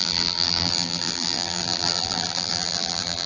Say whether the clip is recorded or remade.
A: remade